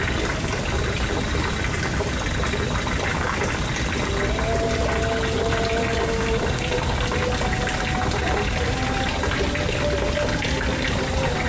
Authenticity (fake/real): real